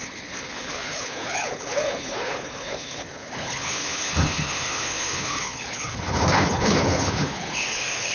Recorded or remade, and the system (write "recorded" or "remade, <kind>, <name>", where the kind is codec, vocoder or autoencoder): remade, codec, HILCodec